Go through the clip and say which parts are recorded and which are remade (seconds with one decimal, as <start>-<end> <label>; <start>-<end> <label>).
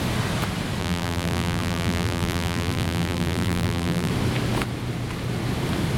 0.0-0.8 recorded; 0.8-4.1 remade; 4.1-6.0 recorded